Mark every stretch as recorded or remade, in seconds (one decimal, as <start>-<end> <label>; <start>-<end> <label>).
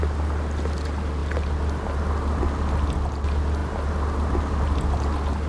0.0-5.5 recorded